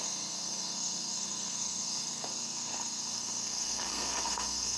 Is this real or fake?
fake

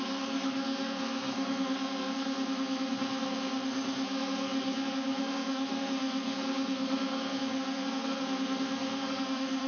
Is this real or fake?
fake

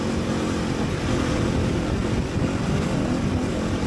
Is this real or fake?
real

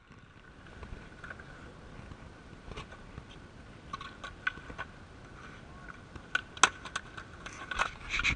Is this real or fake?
real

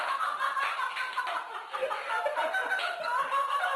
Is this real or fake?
real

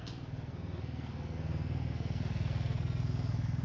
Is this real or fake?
fake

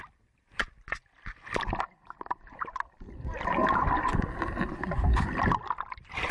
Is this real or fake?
real